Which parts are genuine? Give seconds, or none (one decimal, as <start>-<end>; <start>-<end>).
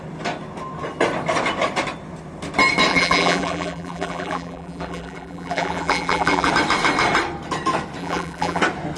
0.0-2.9; 6.5-8.0; 8.6-9.0